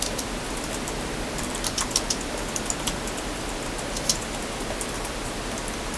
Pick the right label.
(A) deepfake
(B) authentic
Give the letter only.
B